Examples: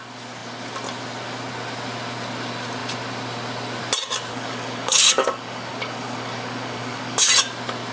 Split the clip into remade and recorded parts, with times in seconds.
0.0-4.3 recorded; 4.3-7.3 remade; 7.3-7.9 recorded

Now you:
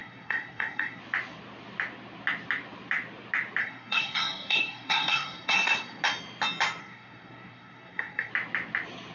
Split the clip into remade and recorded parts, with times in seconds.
0.0-1.0 remade; 1.0-3.6 recorded; 3.6-6.0 remade; 6.0-6.8 recorded; 6.8-8.3 remade; 8.3-9.1 recorded

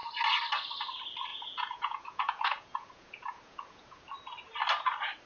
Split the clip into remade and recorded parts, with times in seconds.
0.0-1.3 recorded; 1.3-4.0 remade; 4.0-5.3 recorded

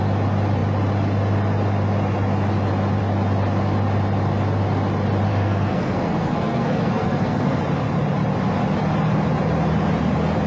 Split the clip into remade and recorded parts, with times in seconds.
0.0-5.3 recorded; 5.3-7.6 remade; 7.6-10.5 recorded